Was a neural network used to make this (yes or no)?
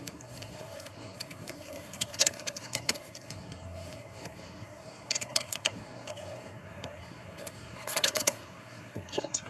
yes